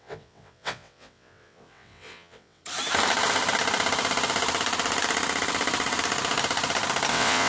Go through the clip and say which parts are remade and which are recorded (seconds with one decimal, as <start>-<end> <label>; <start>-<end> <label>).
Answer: 0.0-2.6 remade; 2.6-7.1 recorded; 7.1-7.5 remade